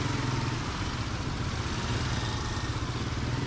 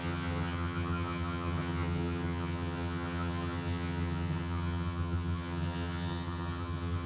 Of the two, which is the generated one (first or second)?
second